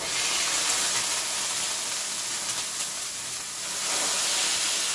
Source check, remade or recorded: recorded